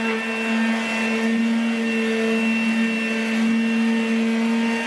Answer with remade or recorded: recorded